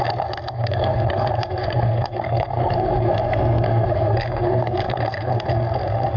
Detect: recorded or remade remade